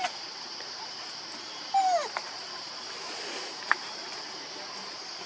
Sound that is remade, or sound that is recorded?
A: recorded